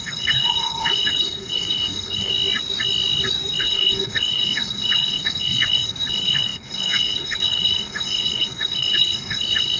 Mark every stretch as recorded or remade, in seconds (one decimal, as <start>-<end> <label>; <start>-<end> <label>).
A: 0.0-2.3 remade; 2.3-3.6 recorded; 3.6-9.8 remade